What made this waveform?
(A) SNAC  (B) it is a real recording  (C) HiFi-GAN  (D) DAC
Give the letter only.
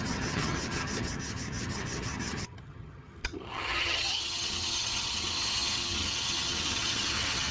C